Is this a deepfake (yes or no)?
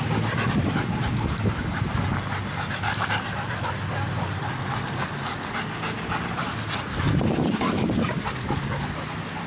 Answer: no